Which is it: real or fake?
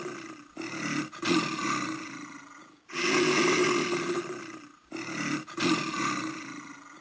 real